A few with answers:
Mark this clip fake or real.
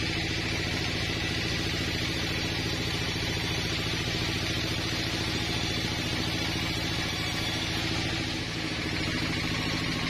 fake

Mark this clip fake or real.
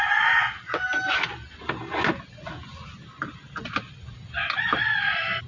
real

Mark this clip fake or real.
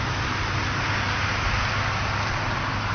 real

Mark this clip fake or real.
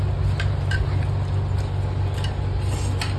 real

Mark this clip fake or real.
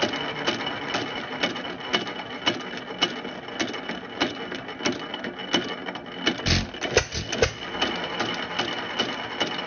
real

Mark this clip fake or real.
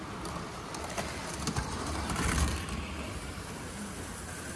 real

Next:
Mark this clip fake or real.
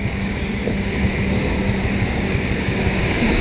fake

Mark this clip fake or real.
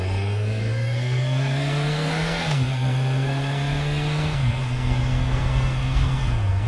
fake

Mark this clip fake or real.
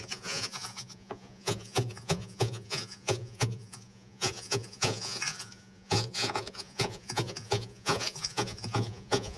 fake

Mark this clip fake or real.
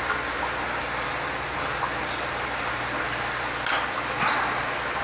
real